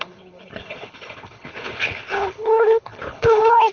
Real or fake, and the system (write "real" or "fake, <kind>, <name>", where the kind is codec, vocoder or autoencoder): fake, codec, HILCodec